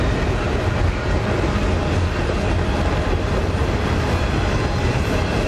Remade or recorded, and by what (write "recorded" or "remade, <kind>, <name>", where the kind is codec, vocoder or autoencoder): recorded